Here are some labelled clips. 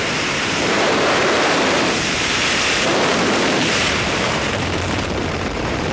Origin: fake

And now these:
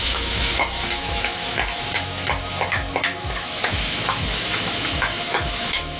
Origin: fake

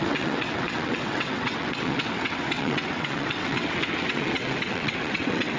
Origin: fake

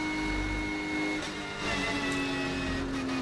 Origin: real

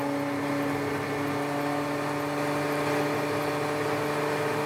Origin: real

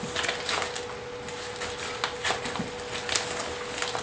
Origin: real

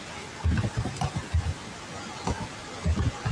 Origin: real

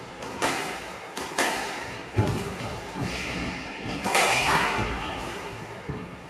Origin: fake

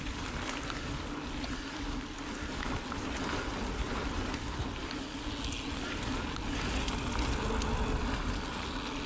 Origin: real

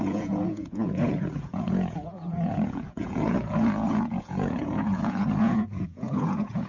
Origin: fake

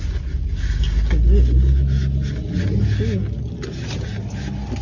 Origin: real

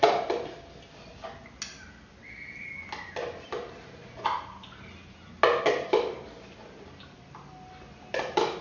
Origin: real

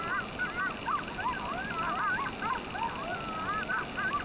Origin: real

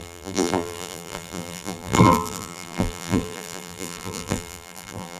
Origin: fake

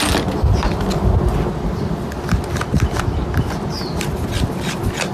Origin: real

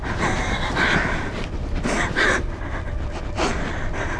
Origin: real